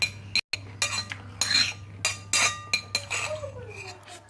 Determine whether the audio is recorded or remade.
recorded